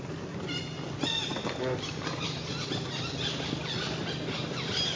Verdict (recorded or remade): recorded